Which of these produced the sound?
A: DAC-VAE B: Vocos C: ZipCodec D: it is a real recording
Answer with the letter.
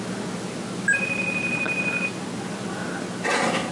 D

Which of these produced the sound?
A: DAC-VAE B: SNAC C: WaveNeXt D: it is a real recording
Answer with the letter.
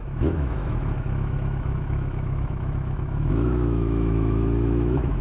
A